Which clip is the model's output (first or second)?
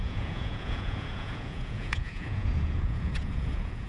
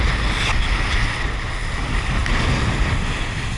first